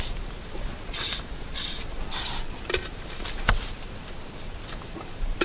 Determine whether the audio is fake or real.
fake